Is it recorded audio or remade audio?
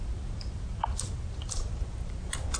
recorded